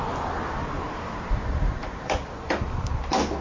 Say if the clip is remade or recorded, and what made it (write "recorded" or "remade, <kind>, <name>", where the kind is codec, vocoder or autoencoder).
recorded